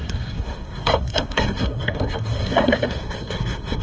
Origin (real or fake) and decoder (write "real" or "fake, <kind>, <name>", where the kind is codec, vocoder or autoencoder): fake, codec, SNAC